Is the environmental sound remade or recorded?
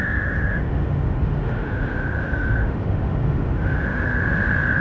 remade